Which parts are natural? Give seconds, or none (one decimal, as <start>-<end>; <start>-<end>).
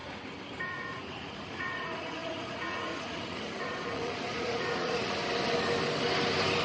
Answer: 0.0-0.6; 5.2-6.6